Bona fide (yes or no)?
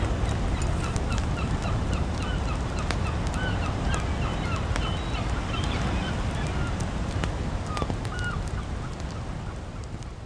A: yes